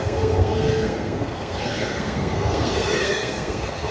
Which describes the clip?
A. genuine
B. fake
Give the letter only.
B